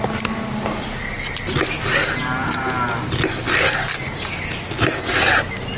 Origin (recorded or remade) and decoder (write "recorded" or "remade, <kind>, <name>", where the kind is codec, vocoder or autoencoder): recorded